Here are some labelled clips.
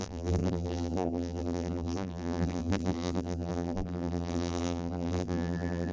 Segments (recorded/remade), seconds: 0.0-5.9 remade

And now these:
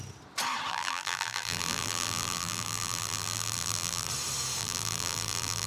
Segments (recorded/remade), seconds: 0.0-0.7 recorded; 0.7-4.1 remade; 4.1-4.6 recorded; 4.6-5.7 remade

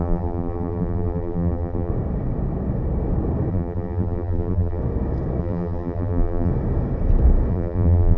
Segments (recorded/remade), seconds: 0.0-1.9 remade; 1.9-3.5 recorded; 3.5-4.8 remade; 4.8-5.4 recorded; 5.4-6.5 remade; 6.5-7.5 recorded; 7.5-8.2 remade

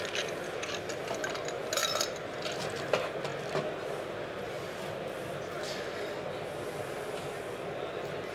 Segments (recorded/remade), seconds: 0.0-1.8 recorded; 1.8-2.8 remade; 2.8-8.3 recorded

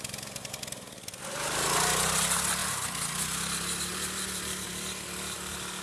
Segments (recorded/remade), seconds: 0.0-5.8 recorded

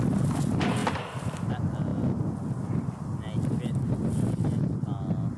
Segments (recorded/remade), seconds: 0.0-5.4 recorded

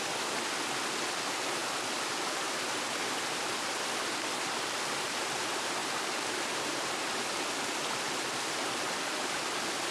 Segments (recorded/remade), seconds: 0.0-5.8 recorded; 5.8-7.1 remade; 7.1-9.9 recorded